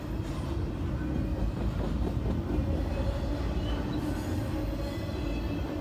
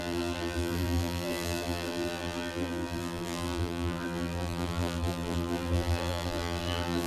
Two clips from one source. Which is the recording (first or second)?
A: first